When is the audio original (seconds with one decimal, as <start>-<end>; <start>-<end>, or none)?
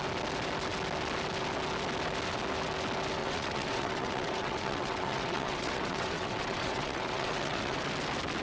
0.0-3.2; 7.8-8.4